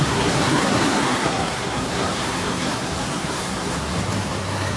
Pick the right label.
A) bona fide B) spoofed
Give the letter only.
B